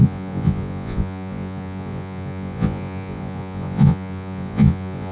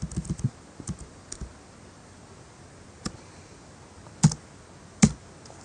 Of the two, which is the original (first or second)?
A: second